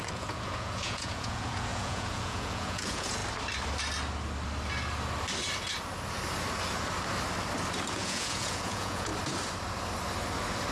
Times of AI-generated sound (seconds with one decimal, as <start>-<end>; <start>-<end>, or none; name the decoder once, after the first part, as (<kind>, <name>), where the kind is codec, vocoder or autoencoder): 0.0-3.2 (vocoder, Vocos); 7.9-9.1